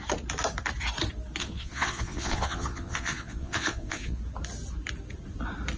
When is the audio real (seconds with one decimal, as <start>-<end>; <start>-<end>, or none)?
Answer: 0.0-1.4; 4.2-5.8